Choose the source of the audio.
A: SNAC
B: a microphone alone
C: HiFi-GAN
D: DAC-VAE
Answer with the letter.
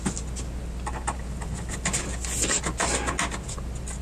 B